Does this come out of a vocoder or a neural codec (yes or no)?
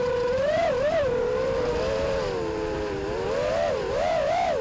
yes